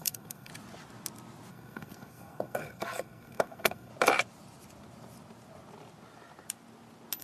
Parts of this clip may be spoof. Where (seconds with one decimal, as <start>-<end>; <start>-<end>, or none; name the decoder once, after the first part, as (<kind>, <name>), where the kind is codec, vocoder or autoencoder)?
0.0-0.5 (codec, SNAC); 1.5-3.9